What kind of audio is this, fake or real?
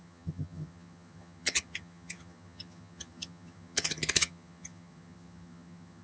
fake